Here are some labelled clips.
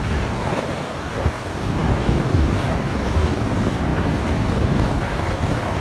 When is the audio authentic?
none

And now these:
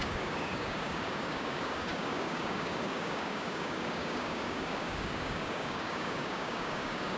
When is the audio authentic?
none

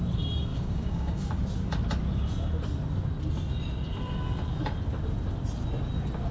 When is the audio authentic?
0.0-0.5; 1.3-6.3